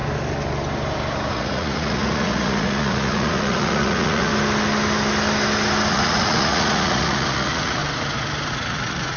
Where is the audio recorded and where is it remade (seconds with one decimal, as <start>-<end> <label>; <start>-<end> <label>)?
0.0-1.3 recorded; 1.3-4.3 remade; 4.3-5.9 recorded; 5.9-7.8 remade; 7.8-8.5 recorded; 8.5-9.2 remade